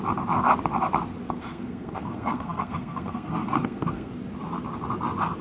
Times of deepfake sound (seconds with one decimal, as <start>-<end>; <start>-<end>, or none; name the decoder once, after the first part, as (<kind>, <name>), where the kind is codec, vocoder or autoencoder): 1.4-4.1 (codec, SNAC)